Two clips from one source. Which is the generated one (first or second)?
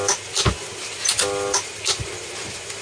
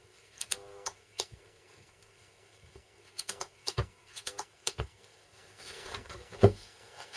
second